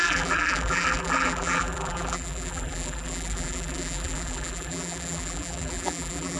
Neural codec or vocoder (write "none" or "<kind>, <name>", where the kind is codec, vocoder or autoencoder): vocoder, BigVGAN v2